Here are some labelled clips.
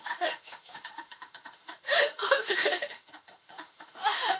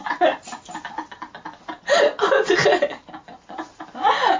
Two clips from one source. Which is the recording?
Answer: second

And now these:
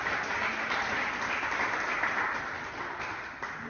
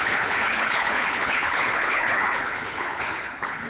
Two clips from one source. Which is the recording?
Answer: first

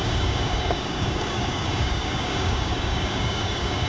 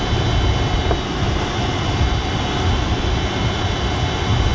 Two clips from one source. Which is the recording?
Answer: second